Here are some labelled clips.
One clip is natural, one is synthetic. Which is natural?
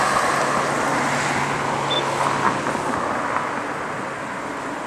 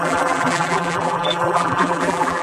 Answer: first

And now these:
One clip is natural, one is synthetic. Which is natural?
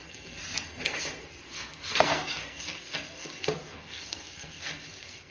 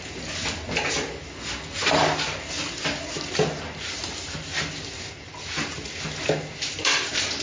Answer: second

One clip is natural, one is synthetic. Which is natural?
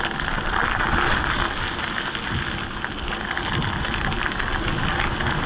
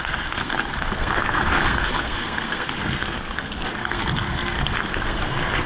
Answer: first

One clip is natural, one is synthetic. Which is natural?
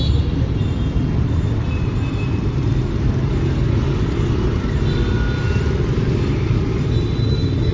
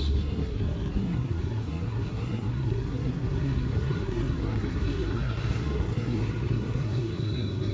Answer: first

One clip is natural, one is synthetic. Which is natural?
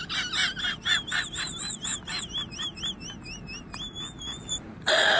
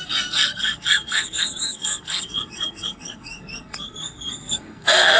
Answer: first